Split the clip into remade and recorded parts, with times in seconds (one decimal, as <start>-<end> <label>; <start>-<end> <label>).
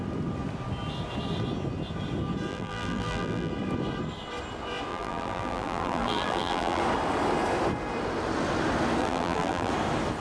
0.0-2.5 recorded; 2.5-3.5 remade; 3.5-4.9 recorded; 4.9-6.8 remade; 6.8-9.0 recorded; 9.0-9.7 remade; 9.7-10.2 recorded